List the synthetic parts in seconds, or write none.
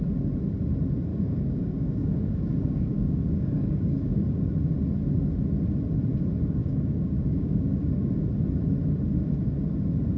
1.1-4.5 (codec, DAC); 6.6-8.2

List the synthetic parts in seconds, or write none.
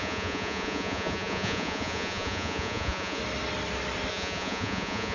0.0-3.2 (vocoder, Vocos); 4.1-5.1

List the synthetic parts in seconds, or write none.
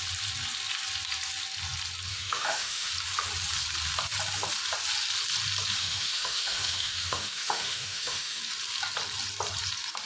2.1-2.9 (autoencoder, DAC-VAE); 5.8-8.4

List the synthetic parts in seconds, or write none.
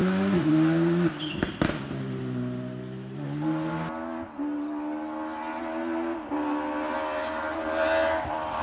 0.0-0.5 (autoencoder, DAC-VAE)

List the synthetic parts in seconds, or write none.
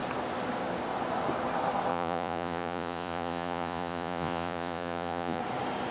1.9-5.4 (vocoder, Vocos)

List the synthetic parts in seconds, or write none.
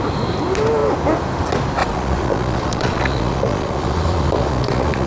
1.8-5.1 (vocoder, Vocos)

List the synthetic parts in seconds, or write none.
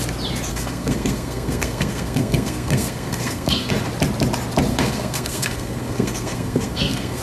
0.5-3.7 (codec, SNAC); 4.7-7.2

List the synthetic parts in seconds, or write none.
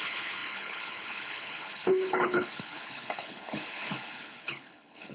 0.0-5.1 (codec, HILCodec)